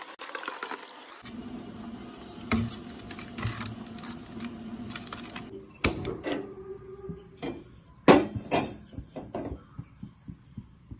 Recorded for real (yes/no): yes